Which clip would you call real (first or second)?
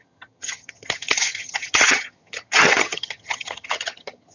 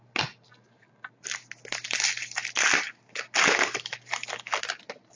second